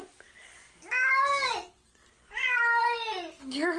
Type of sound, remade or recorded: recorded